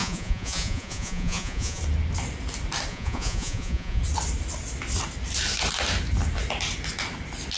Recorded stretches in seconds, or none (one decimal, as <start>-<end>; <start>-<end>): 1.8-2.9; 4.0-7.6